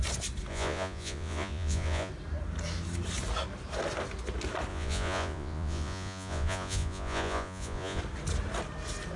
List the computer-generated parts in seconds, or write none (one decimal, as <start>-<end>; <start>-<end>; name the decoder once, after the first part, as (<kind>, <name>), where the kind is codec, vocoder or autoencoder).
0.5-2.1 (vocoder, Vocos); 4.7-8.0